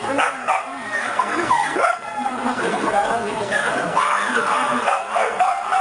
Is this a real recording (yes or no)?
no